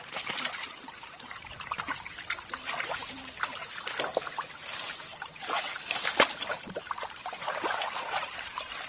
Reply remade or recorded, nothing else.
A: remade